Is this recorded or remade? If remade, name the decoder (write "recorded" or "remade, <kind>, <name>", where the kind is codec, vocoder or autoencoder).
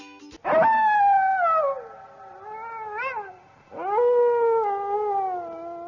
recorded